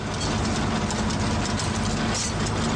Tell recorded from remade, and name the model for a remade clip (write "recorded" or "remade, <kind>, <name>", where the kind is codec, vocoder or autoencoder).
recorded